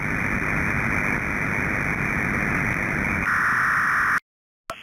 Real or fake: real